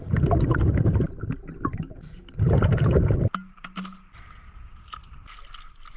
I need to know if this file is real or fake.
real